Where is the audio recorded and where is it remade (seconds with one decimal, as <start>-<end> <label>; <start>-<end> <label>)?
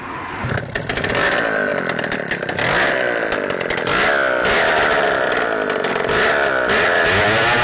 0.0-7.6 recorded